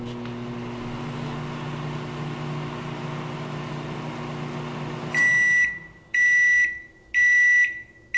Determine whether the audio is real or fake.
real